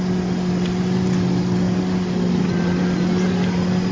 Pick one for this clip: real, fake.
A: real